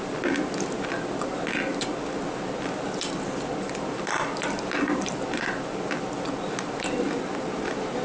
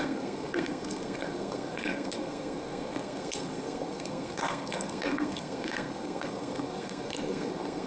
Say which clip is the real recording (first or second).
first